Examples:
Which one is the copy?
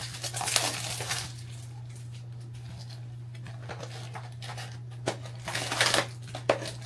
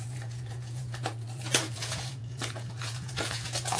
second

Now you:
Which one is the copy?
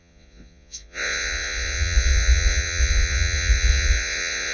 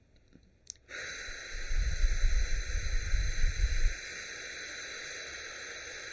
first